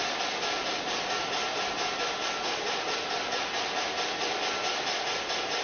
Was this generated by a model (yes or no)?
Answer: no